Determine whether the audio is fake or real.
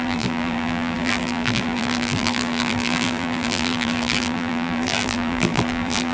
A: fake